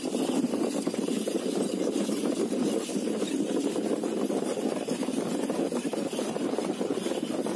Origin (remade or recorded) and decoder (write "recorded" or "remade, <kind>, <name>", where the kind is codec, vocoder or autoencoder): recorded